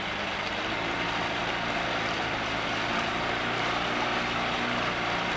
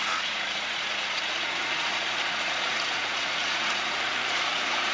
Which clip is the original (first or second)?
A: first